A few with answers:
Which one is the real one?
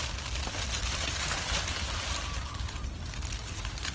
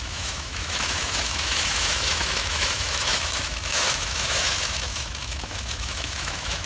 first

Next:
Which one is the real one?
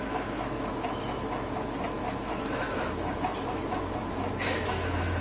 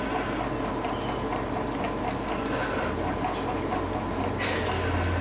second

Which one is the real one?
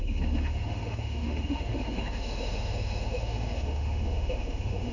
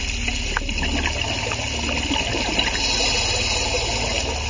second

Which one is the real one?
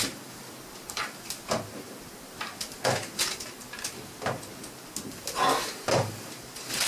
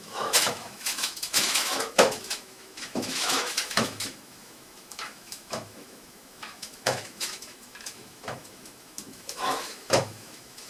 first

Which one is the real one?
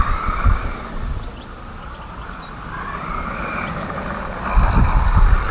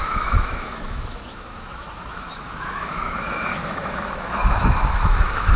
first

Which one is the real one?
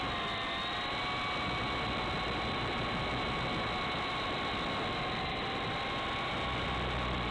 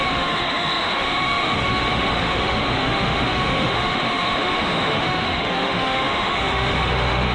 first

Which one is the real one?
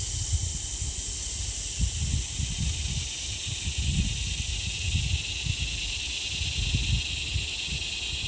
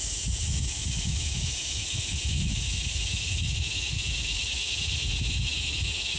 first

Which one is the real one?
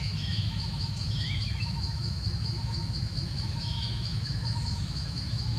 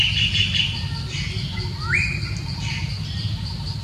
second